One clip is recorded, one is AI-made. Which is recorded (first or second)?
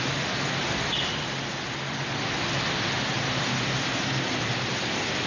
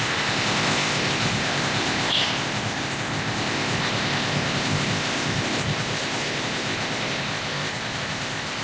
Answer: first